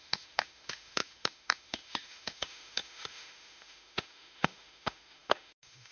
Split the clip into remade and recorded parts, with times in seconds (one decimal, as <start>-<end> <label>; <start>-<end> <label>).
0.0-5.9 remade